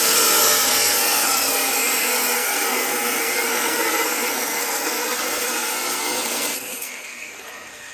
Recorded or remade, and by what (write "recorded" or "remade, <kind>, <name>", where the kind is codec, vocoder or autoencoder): remade, codec, SNAC